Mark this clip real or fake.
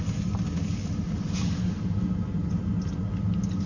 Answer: real